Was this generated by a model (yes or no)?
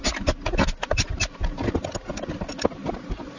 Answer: no